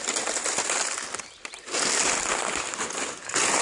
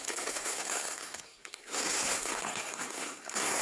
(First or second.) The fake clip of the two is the second